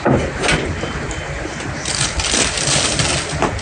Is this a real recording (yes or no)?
yes